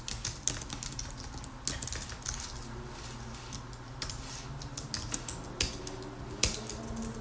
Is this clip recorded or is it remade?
recorded